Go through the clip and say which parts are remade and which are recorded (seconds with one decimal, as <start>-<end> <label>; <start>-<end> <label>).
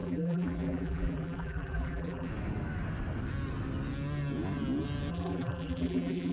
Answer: 0.0-2.3 remade; 2.3-5.1 recorded; 5.1-6.3 remade